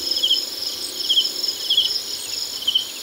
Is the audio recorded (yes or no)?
yes